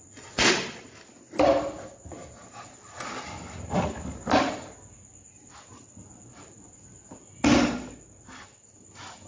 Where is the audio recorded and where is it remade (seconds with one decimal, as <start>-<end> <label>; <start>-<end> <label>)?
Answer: 0.0-9.3 recorded